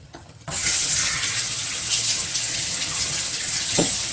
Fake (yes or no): yes